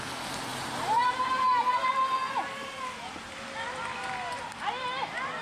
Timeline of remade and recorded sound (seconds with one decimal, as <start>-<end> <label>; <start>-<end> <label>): 0.0-0.5 recorded; 0.5-1.9 remade; 1.9-5.4 recorded